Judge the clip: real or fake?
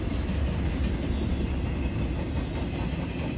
real